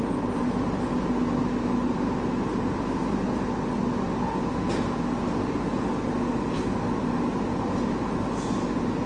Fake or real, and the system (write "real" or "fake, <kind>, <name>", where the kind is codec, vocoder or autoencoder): real